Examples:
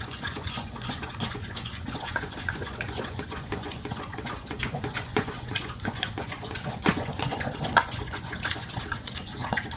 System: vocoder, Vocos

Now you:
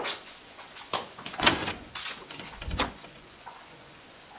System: vocoder, Vocos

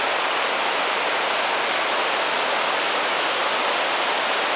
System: none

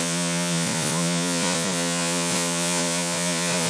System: vocoder, Vocos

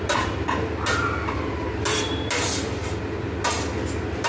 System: none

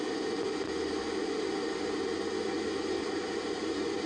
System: none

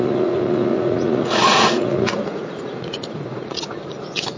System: vocoder, Vocos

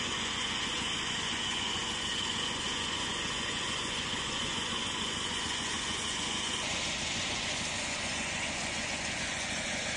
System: vocoder, Vocos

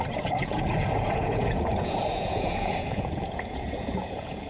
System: vocoder, Vocos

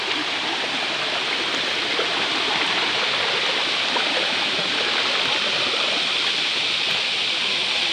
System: none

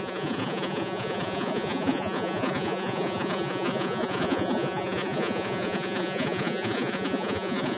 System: vocoder, Vocos